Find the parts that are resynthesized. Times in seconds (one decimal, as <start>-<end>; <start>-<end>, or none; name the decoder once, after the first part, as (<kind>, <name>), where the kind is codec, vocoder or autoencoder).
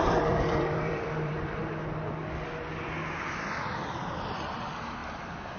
0.0-1.6 (vocoder, BigVGAN v2); 3.7-5.6